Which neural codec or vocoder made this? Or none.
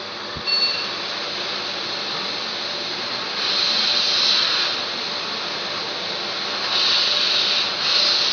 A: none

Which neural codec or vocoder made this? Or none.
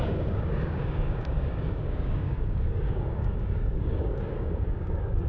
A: codec, DAC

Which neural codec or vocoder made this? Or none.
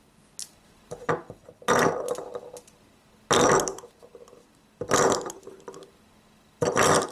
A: none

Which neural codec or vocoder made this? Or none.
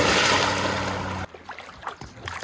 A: none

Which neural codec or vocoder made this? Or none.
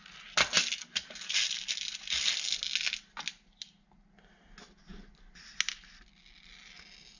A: none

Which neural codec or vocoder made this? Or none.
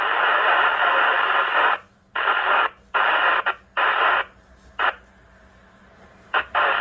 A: none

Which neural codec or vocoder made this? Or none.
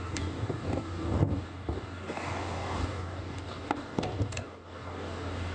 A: codec, DAC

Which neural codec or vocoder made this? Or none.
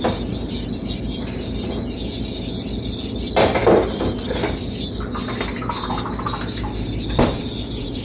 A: none